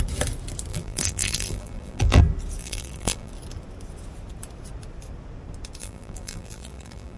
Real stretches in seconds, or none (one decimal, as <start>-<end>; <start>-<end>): 0.0-0.7; 2.2-2.6; 3.3-5.8